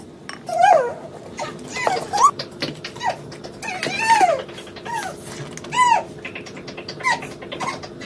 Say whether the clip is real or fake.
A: real